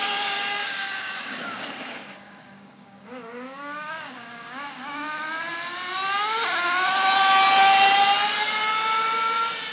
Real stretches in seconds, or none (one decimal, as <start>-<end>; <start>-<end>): 4.8-9.7